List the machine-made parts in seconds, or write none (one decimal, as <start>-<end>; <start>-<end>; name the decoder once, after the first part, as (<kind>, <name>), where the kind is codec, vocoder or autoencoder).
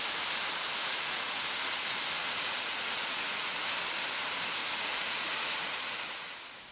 0.8-1.4 (vocoder, Vocos); 2.2-3.7; 4.6-6.3